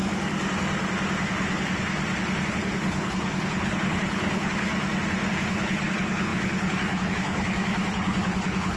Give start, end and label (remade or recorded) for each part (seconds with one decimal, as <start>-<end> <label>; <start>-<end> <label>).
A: 0.0-2.5 recorded; 2.5-4.7 remade; 4.7-5.3 recorded; 5.3-8.8 remade